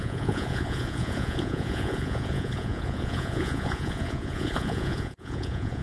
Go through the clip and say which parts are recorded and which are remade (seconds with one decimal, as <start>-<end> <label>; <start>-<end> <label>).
0.0-5.8 remade

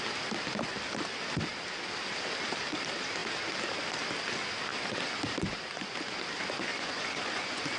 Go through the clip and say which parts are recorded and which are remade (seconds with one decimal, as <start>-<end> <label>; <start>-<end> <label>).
0.0-4.7 recorded; 4.7-5.2 remade; 5.2-6.7 recorded; 6.7-7.8 remade

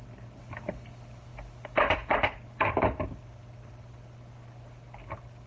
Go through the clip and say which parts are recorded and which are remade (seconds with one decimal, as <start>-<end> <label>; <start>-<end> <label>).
0.0-5.5 recorded

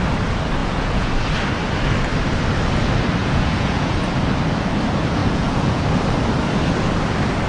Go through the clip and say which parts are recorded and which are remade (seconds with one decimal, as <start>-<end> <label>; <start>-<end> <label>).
0.0-0.6 recorded; 0.6-1.1 remade; 1.1-3.2 recorded; 3.2-3.9 remade; 3.9-5.2 recorded; 5.2-5.8 remade; 5.8-7.5 recorded

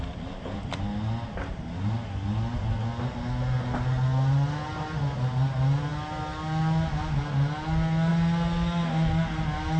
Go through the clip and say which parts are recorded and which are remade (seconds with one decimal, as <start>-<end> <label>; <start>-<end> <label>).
0.0-9.8 recorded

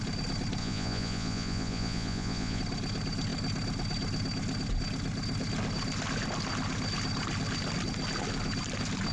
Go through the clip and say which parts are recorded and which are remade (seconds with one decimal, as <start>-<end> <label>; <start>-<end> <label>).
0.0-0.6 recorded; 0.6-2.6 remade; 2.6-9.1 recorded

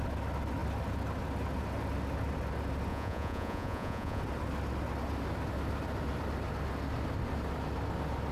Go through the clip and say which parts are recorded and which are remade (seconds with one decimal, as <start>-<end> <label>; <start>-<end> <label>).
0.0-2.9 recorded; 2.9-4.2 remade; 4.2-8.3 recorded

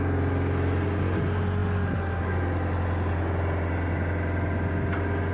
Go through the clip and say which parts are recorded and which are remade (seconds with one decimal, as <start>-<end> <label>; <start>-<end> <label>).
0.0-5.3 recorded